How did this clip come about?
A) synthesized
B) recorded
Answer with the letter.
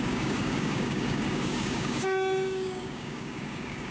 A